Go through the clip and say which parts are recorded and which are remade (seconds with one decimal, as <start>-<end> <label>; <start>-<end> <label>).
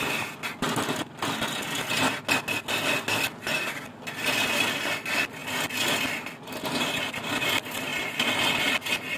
0.0-9.2 recorded